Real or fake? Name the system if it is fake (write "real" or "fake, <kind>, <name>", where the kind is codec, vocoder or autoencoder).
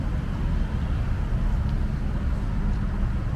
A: real